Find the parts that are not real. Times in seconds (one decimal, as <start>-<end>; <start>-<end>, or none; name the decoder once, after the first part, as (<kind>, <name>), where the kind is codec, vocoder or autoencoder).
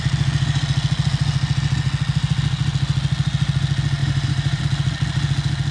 4.0-4.6 (vocoder, BigVGAN v2)